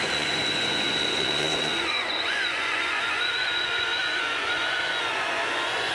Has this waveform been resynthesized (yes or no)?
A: yes